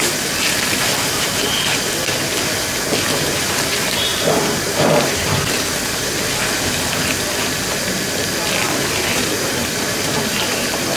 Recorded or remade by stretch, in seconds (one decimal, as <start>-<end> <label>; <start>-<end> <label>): 0.0-4.1 recorded; 4.1-5.4 remade; 5.4-9.1 recorded; 9.1-10.0 remade; 10.0-11.0 recorded